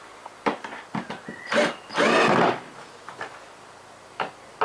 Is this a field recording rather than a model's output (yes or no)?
yes